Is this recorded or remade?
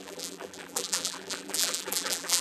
remade